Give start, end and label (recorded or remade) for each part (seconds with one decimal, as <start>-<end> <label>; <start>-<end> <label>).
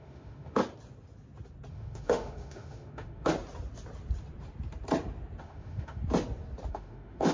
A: 0.0-0.6 remade; 0.6-1.7 recorded; 1.7-3.3 remade; 3.3-5.4 recorded; 5.4-6.0 remade; 6.0-6.7 recorded; 6.7-7.3 remade